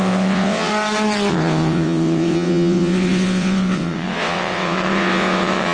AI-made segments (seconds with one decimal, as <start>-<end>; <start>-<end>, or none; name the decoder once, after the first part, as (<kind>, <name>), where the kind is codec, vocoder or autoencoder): 0.0-0.7 (vocoder, WaveNeXt); 1.3-5.7